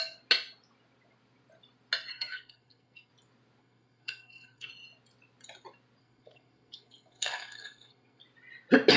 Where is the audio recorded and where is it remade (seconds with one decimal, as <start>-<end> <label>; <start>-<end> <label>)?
0.0-2.1 recorded; 2.1-3.1 remade; 3.1-3.6 recorded; 3.6-4.7 remade; 4.7-6.0 recorded; 6.0-8.2 remade; 8.2-9.0 recorded